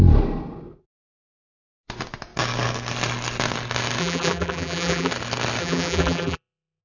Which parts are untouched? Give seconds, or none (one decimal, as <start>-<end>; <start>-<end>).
0.0-4.0; 5.1-5.6